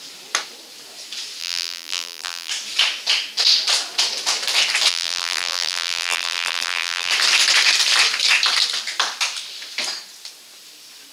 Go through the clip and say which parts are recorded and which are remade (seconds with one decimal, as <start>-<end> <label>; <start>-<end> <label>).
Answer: 0.0-1.4 recorded; 1.4-2.5 remade; 2.5-4.9 recorded; 4.9-7.1 remade; 7.1-11.1 recorded